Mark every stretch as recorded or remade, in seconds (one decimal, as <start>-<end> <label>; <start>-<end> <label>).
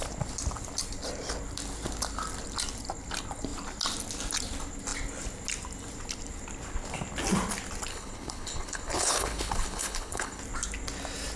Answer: 0.0-7.9 recorded; 7.9-10.4 remade; 10.4-11.4 recorded